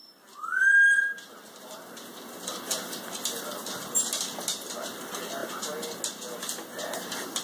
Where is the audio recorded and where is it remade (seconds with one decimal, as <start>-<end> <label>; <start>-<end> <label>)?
0.0-7.4 recorded